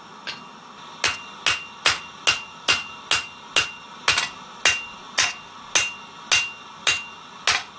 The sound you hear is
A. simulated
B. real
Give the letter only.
B